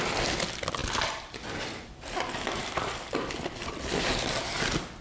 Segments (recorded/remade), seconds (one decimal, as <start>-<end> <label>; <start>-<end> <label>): 0.0-5.0 recorded